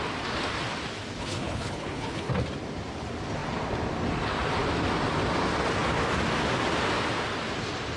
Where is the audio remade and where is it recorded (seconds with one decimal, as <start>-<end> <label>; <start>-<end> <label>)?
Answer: 0.0-1.2 recorded; 1.2-2.3 remade; 2.3-8.0 recorded